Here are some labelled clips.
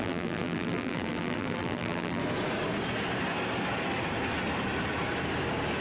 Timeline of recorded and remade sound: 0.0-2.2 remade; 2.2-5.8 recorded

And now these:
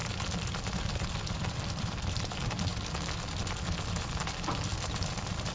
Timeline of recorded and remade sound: 0.0-2.7 remade; 2.7-3.4 recorded; 3.4-5.5 remade

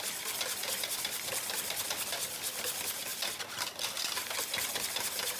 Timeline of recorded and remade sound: 0.0-3.1 recorded; 3.1-4.0 remade; 4.0-5.4 recorded

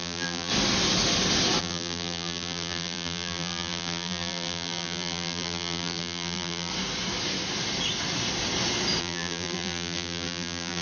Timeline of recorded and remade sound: 0.0-0.5 remade; 0.5-1.6 recorded; 1.6-6.7 remade; 6.7-9.0 recorded; 9.0-10.8 remade

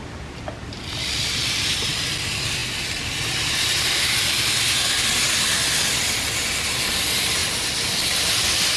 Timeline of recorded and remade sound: 0.0-2.6 remade; 2.6-6.3 recorded; 6.3-8.8 remade

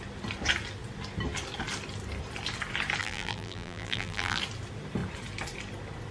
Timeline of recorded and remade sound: 0.0-3.0 recorded; 3.0-4.4 remade; 4.4-6.1 recorded

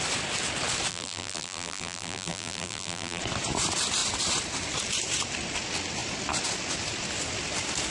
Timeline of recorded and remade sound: 0.0-0.9 recorded; 0.9-3.2 remade; 3.2-7.9 recorded

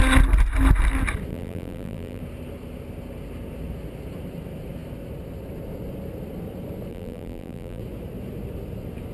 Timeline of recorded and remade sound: 0.0-1.3 recorded; 1.3-2.2 remade; 2.2-6.9 recorded; 6.9-7.8 remade; 7.8-9.1 recorded